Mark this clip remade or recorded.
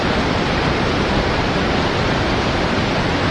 recorded